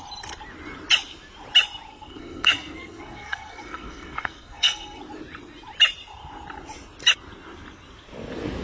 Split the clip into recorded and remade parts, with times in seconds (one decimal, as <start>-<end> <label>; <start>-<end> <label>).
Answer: 0.0-1.9 recorded; 1.9-5.0 remade; 5.0-8.6 recorded